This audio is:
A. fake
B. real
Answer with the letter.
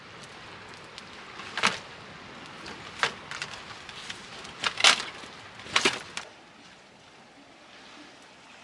B